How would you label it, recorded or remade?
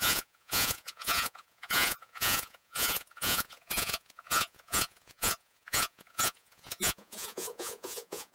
remade